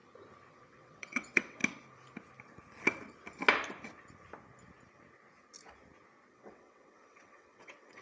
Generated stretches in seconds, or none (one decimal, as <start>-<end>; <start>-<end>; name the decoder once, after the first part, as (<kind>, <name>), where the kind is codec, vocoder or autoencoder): 0.5-1.6 (vocoder, WaveNeXt); 6.3-8.0